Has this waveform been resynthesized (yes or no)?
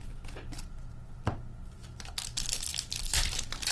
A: no